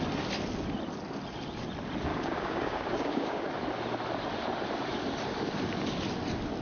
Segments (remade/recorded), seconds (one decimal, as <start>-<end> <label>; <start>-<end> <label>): 0.0-2.1 recorded; 2.1-3.5 remade; 3.5-6.6 recorded